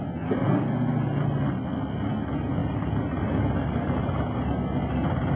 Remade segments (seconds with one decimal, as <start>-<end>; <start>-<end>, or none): none